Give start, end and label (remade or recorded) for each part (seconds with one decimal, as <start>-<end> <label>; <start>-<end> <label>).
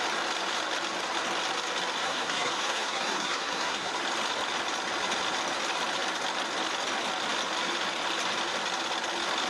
0.0-2.0 recorded; 2.0-3.9 remade; 3.9-9.5 recorded